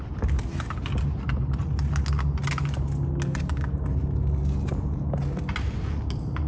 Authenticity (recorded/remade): recorded